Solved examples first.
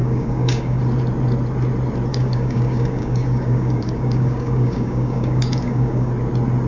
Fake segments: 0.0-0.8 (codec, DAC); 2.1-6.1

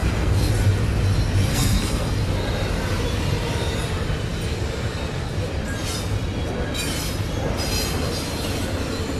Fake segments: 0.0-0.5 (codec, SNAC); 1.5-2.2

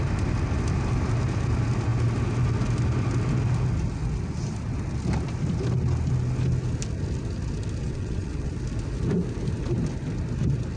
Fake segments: 7.8-8.5 (vocoder, WaveNeXt)

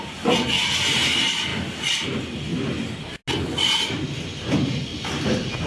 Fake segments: none

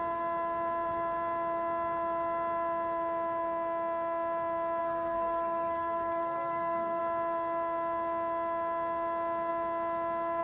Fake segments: 4.8-7.0 (codec, SNAC)

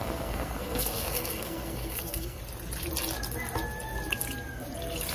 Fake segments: 0.0-2.4 (codec, SNAC)

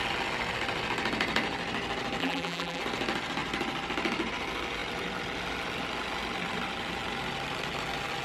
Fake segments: 2.2-2.8 (vocoder, BigVGAN v2)